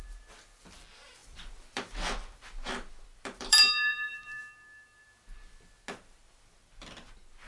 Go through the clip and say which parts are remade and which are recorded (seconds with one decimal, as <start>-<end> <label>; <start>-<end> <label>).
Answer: 0.0-1.2 recorded; 1.2-4.4 remade; 4.4-6.2 recorded; 6.2-7.5 remade